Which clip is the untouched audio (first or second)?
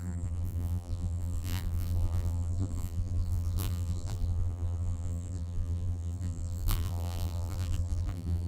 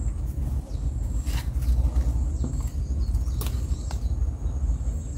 second